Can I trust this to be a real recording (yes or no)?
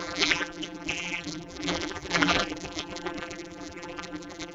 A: no